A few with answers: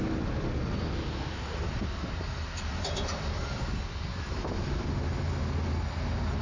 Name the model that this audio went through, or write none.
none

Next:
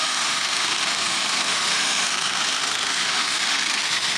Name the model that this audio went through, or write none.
autoencoder, DAC-VAE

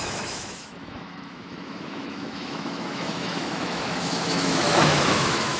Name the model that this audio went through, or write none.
autoencoder, DAC-VAE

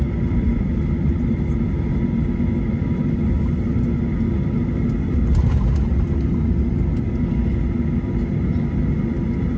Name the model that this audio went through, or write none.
none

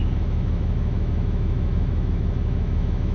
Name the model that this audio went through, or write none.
autoencoder, DAC-VAE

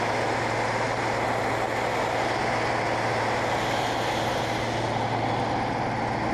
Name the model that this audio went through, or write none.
none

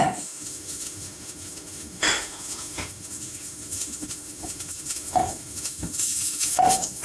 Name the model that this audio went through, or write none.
autoencoder, DAC-VAE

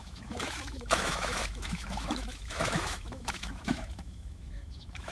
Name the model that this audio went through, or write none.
autoencoder, DAC-VAE